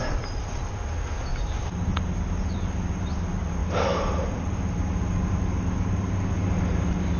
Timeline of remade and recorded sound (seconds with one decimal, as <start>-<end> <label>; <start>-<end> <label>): 0.0-1.3 recorded; 1.3-2.4 remade; 2.4-3.6 recorded; 3.6-5.3 remade; 5.3-7.2 recorded